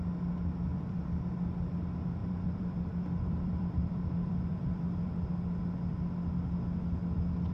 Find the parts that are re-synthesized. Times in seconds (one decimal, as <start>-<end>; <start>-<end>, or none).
0.7-1.3; 2.2-5.1